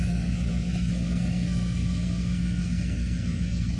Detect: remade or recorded remade